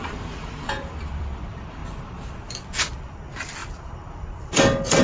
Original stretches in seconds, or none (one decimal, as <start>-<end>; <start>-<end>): 1.8-3.0